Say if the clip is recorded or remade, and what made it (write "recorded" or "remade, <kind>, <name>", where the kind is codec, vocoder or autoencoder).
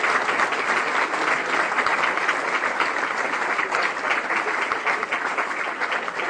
recorded